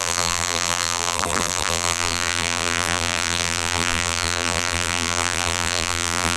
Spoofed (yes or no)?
yes